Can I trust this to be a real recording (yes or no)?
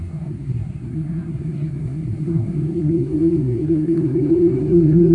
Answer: no